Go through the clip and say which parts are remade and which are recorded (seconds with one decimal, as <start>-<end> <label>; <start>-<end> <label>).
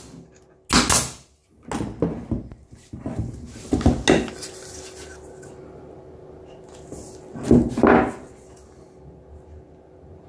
0.0-10.3 recorded